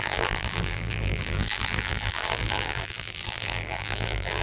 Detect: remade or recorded remade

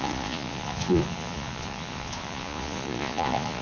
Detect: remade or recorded remade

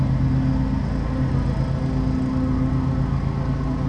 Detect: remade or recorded recorded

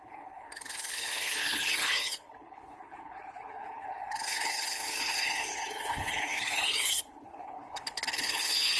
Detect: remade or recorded remade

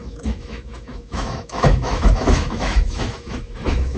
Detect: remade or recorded remade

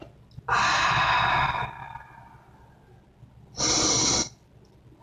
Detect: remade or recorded recorded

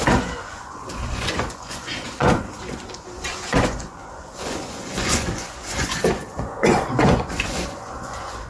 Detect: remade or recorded remade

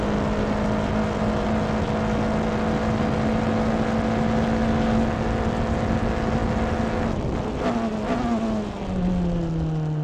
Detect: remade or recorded recorded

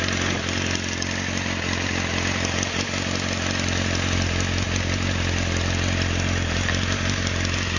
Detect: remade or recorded recorded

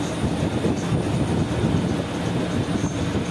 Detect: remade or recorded recorded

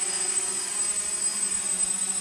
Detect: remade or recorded recorded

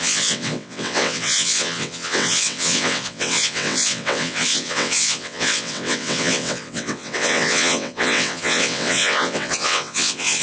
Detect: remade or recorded remade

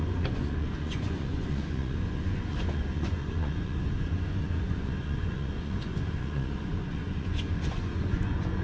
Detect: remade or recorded remade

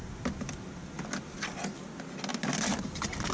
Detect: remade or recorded recorded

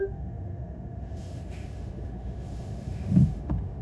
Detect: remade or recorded remade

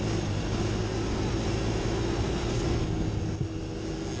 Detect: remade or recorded recorded